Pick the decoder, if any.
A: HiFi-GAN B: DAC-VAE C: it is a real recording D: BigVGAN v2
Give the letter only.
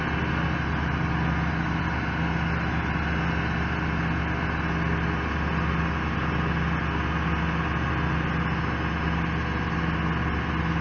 C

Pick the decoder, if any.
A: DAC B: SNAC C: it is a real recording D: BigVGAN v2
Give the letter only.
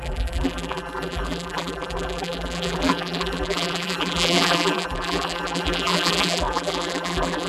D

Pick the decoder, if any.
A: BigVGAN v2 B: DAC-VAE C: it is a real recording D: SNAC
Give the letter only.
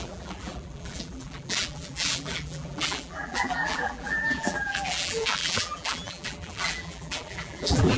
A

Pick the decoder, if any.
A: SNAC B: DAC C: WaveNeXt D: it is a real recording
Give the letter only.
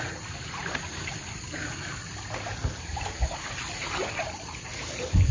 D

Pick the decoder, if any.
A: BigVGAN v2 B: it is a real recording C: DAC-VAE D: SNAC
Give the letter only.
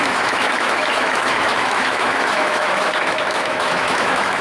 C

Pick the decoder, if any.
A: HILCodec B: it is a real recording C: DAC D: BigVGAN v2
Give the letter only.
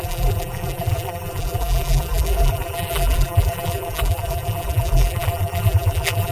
D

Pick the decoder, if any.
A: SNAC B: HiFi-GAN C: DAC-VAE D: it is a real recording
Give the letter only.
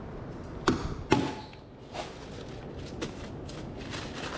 D